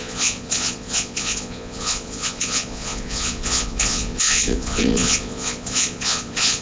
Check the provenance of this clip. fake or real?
fake